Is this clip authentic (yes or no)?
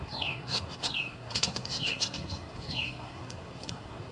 no